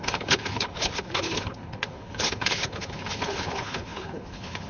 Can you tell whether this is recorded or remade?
remade